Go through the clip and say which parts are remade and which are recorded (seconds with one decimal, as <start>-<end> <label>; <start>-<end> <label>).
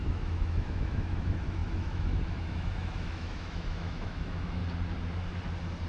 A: 0.0-4.6 remade; 4.6-5.9 recorded